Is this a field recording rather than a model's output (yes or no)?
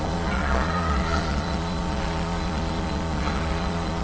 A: no